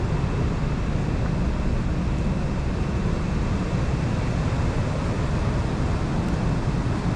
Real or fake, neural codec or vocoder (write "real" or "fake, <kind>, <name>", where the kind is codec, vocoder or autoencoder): real